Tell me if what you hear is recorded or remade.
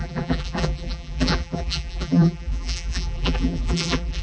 remade